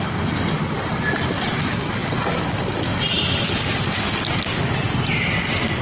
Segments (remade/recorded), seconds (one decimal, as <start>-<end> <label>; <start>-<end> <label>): 0.0-5.8 recorded